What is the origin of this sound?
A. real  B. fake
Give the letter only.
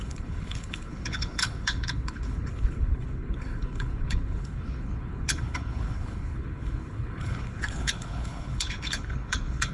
B